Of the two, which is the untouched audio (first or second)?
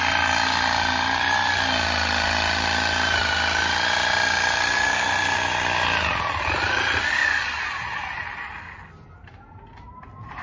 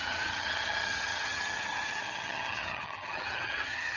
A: first